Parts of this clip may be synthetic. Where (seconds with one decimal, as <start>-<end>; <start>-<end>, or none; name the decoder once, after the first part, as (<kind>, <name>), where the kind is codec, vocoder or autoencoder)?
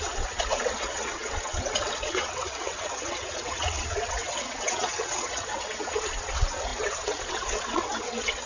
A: 0.0-8.5 (vocoder, WaveNeXt)